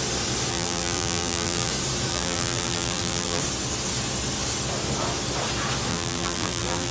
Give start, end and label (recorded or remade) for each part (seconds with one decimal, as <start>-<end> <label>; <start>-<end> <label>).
0.0-0.5 recorded; 0.5-1.7 remade; 1.7-2.1 recorded; 2.1-3.4 remade; 3.4-5.9 recorded; 5.9-6.9 remade